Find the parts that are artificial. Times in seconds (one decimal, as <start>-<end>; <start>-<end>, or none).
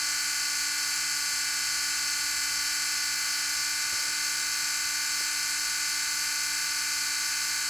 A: none